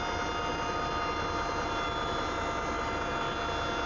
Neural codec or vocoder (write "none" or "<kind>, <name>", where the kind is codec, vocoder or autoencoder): none